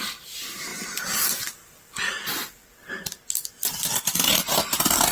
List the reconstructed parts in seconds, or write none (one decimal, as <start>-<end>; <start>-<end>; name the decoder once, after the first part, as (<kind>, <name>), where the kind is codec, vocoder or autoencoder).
none